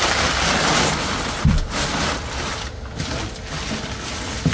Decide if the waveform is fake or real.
real